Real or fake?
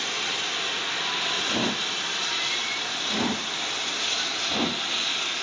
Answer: real